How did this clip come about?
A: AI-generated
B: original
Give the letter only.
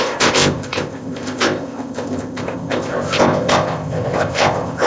A